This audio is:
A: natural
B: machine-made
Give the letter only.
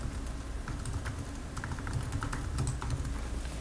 A